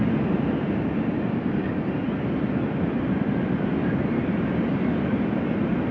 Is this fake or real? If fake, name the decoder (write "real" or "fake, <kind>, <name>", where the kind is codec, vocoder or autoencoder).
real